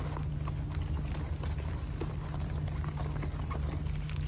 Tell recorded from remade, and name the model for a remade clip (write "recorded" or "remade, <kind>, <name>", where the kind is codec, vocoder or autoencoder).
recorded